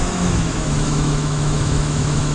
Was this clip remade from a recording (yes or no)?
yes